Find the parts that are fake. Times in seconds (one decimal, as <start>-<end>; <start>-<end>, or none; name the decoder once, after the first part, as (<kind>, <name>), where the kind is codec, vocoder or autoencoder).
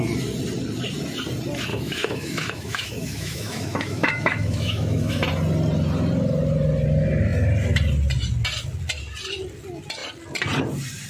1.7-5.2 (autoencoder, DAC-VAE)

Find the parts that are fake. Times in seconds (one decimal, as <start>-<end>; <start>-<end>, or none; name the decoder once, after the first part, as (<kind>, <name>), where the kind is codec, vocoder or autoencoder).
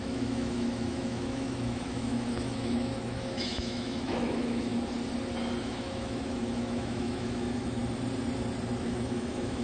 0.0-4.7 (autoencoder, DAC-VAE); 5.6-7.8; 8.8-9.6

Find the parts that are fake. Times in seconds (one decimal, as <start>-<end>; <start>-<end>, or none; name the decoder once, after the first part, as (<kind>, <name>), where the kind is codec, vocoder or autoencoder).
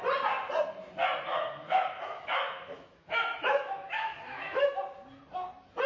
1.3-4.8 (autoencoder, DAC-VAE)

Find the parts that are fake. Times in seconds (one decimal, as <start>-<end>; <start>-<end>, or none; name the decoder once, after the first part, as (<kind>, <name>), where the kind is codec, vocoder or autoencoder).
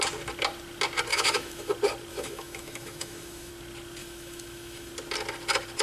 1.1-1.7 (autoencoder, DAC-VAE); 2.1-3.5; 4.0-4.9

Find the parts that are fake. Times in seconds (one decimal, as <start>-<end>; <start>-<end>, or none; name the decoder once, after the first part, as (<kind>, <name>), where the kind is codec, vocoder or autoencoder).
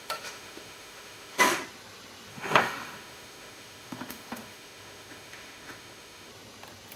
0.0-1.6 (autoencoder, DAC-VAE); 2.3-6.3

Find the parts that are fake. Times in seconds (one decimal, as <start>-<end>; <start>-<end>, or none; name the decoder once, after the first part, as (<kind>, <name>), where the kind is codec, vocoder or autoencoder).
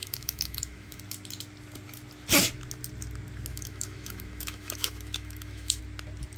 0.0-1.0 (autoencoder, DAC-VAE); 3.5-5.8